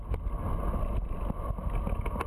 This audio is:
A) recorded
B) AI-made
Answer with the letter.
A